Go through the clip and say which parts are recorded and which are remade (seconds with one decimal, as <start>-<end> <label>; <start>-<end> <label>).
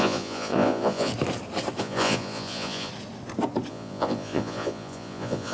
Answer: 0.0-1.1 remade; 1.1-1.8 recorded; 1.8-2.9 remade; 2.9-3.7 recorded; 3.7-5.5 remade